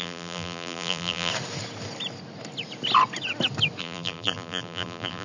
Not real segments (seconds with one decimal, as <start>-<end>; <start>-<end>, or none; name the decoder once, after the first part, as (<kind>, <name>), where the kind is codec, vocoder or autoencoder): 0.0-1.3 (vocoder, BigVGAN v2); 3.8-5.2